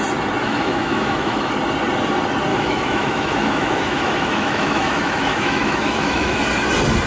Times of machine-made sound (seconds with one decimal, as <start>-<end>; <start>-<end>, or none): 0.4-1.5; 2.5-6.4